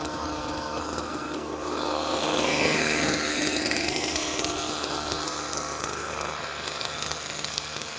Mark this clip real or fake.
fake